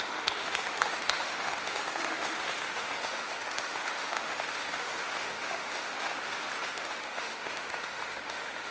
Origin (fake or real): fake